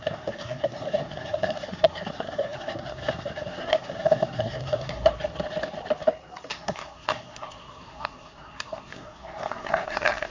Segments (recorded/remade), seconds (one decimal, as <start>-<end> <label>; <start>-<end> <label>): 0.0-5.1 remade; 5.1-6.5 recorded; 6.5-10.3 remade

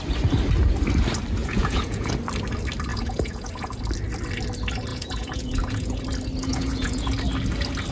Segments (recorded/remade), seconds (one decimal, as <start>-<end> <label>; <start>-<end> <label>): 0.0-1.4 recorded; 1.4-2.1 remade; 2.1-2.9 recorded; 2.9-3.8 remade; 3.8-4.9 recorded; 4.9-6.0 remade; 6.0-6.5 recorded; 6.5-7.1 remade; 7.1-7.9 recorded

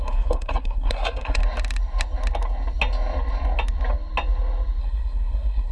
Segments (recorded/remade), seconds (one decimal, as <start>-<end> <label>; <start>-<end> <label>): 0.0-1.4 remade; 1.4-4.8 recorded; 4.8-5.7 remade